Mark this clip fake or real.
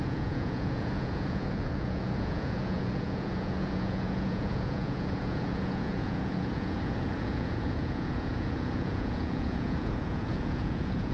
fake